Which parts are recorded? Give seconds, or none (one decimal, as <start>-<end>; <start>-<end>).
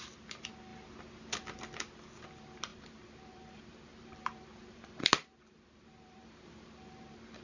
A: 0.0-2.7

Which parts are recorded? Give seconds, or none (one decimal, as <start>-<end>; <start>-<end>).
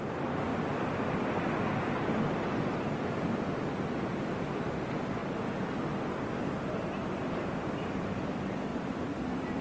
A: 0.0-8.7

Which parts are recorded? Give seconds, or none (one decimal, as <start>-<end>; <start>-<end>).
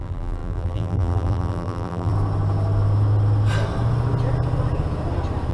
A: 2.1-5.5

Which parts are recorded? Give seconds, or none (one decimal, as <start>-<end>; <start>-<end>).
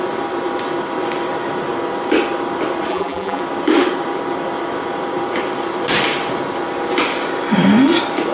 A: 0.0-2.9; 3.4-8.3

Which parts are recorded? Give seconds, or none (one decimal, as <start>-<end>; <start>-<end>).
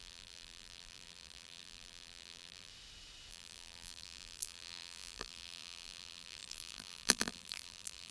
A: 2.7-3.3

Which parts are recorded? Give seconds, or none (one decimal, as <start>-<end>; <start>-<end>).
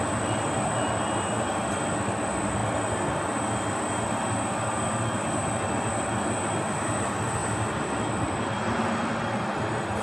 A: 0.0-10.0